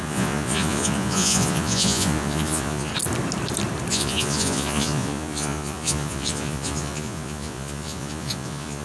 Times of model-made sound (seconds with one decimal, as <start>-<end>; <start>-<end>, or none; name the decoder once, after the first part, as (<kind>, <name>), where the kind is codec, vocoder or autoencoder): 0.0-2.9 (vocoder, Vocos); 3.9-8.8